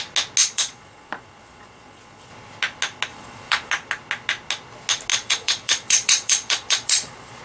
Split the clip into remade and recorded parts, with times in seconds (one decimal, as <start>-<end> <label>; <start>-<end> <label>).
0.0-0.4 recorded; 0.4-2.3 remade; 2.3-3.1 recorded; 3.1-3.7 remade; 3.7-5.1 recorded; 5.1-7.4 remade